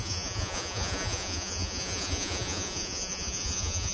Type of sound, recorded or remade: remade